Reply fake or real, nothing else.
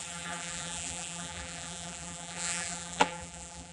fake